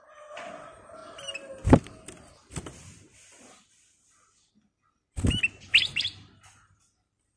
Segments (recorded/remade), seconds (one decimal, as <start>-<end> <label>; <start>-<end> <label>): 0.0-7.4 recorded